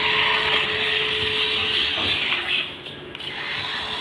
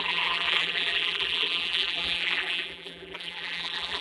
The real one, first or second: first